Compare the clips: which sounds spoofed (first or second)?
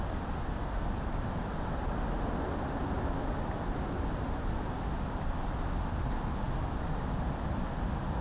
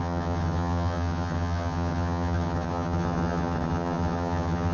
second